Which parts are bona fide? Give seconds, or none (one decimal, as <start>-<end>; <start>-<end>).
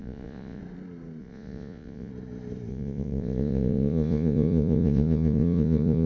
0.6-1.2; 2.1-2.7